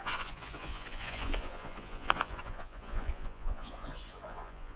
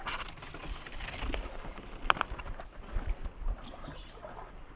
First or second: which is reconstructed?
first